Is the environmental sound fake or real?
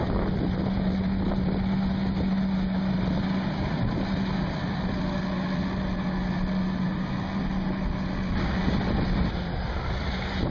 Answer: real